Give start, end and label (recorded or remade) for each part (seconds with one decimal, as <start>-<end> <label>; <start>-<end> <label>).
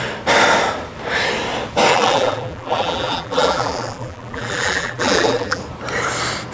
0.0-1.9 recorded; 1.9-5.6 remade; 5.6-6.5 recorded